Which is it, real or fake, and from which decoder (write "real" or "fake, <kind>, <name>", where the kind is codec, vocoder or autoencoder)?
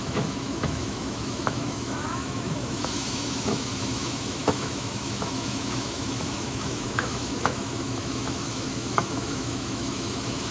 fake, autoencoder, DAC-VAE